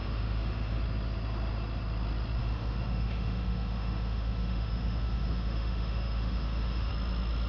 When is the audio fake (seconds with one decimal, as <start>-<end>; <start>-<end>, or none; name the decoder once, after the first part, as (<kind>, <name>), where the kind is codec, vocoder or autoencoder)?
0.0-0.8 (autoencoder, DAC-VAE); 2.4-6.9